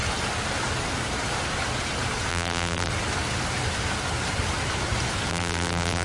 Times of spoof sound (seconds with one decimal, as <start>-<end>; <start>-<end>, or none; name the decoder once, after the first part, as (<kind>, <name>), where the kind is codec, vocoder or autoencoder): 2.3-2.9 (vocoder, BigVGAN v2); 5.3-6.0